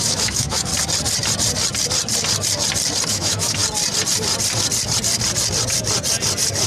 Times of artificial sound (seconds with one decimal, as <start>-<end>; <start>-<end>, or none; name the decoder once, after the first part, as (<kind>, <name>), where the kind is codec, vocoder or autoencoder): 0.0-0.7 (autoencoder, DAC-VAE); 3.1-3.6